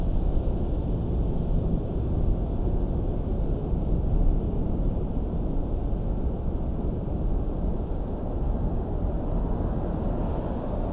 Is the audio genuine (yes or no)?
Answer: yes